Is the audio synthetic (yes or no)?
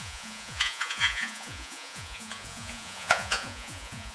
yes